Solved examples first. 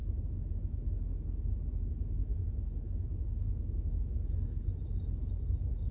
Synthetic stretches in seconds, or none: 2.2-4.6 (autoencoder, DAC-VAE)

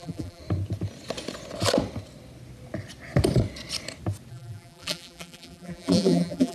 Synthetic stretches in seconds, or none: 0.0-0.4 (vocoder, BigVGAN v2); 4.3-6.5

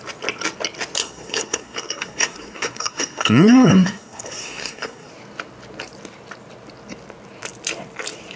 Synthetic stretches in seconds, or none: 1.0-5.1 (codec, SNAC)